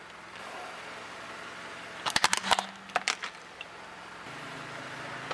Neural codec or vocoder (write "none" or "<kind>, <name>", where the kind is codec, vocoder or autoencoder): none